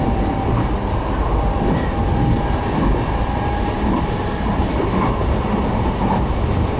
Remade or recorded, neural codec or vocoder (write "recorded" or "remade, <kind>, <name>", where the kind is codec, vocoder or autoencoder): recorded